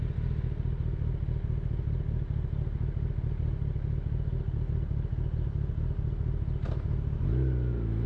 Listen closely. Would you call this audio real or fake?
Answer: real